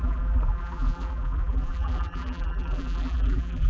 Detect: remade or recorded remade